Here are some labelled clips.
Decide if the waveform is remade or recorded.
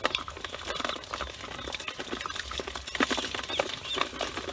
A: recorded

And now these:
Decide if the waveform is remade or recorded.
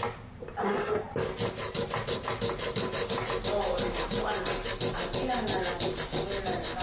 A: recorded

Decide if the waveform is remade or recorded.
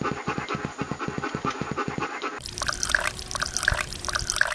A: recorded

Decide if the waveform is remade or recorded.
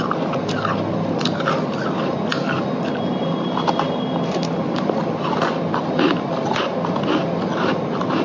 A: recorded